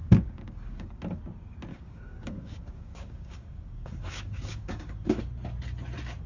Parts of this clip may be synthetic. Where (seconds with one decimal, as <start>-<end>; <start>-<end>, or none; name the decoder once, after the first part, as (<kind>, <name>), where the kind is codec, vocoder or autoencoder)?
0.0-1.0 (codec, DAC); 1.7-5.2